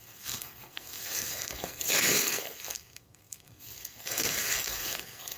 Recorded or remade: remade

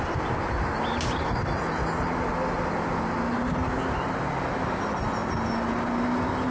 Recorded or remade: recorded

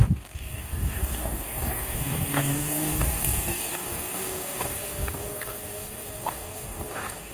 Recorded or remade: remade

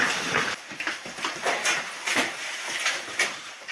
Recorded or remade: remade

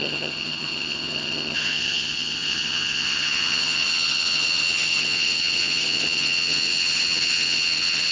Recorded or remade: remade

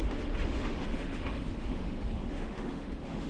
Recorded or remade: remade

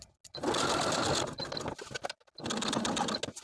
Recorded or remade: recorded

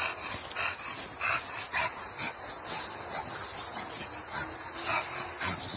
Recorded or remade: recorded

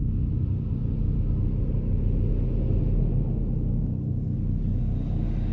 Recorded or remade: recorded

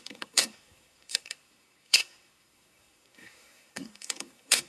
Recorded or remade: remade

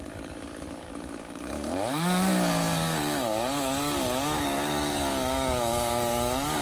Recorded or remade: remade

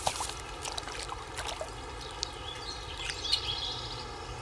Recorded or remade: recorded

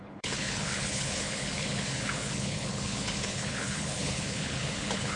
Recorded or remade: remade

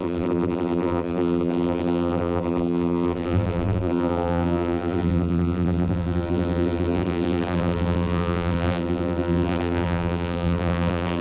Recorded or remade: remade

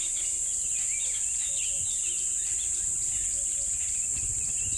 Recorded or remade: recorded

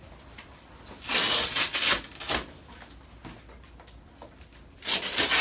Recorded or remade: recorded